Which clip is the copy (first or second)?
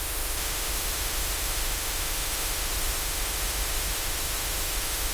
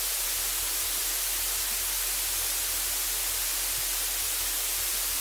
first